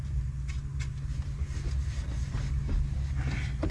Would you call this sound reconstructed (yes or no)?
no